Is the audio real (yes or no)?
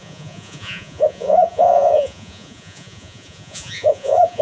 no